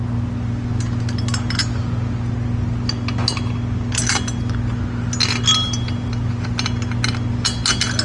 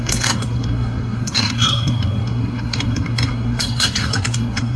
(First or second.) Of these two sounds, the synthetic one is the second